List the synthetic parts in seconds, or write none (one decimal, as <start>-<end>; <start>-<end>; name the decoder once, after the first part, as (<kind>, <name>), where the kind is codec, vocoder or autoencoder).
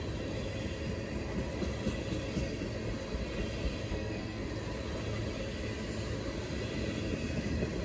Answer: 3.9-4.5 (codec, SNAC)